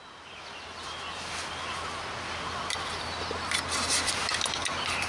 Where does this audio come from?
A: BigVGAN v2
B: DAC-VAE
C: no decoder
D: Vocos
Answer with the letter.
C